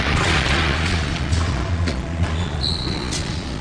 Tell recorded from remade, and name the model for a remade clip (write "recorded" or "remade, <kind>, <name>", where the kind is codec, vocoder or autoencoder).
remade, vocoder, Vocos